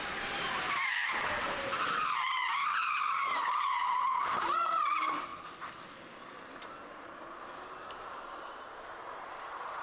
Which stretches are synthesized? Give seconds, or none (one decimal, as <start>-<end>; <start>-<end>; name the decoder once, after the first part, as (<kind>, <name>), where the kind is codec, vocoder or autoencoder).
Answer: 0.0-5.3 (vocoder, BigVGAN v2); 7.7-9.8